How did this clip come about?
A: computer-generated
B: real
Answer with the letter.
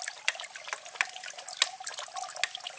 B